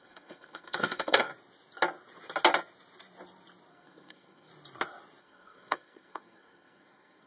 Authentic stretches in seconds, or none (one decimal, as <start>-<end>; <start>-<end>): 1.3-3.7; 4.5-5.2